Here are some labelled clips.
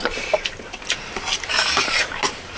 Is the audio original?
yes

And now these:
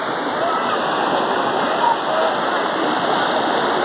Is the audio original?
yes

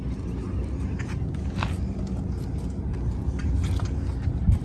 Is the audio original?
yes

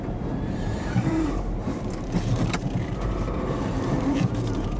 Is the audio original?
no